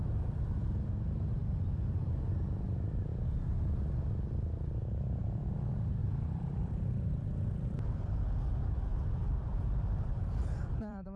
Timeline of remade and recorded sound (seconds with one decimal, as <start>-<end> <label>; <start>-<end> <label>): 0.0-6.0 recorded; 6.0-8.1 remade; 8.1-8.9 recorded; 8.9-11.2 remade